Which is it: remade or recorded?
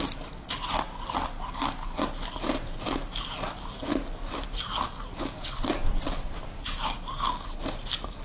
recorded